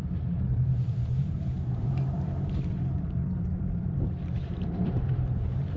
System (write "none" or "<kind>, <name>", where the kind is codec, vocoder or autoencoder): vocoder, BigVGAN v2